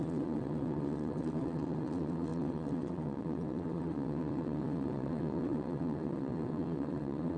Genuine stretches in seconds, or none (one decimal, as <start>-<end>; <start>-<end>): none